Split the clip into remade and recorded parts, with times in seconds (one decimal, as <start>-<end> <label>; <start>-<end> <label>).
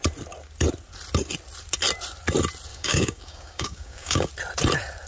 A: 0.0-2.7 recorded; 2.7-4.3 remade; 4.3-5.1 recorded